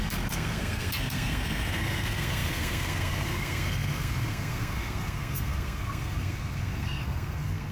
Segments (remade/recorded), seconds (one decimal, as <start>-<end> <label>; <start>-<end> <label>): 0.0-7.7 remade